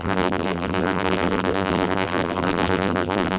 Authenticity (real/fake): fake